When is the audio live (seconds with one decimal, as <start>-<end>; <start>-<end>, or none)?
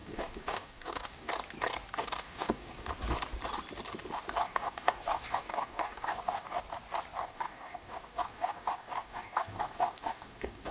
1.3-2.0; 2.9-4.4; 6.6-7.2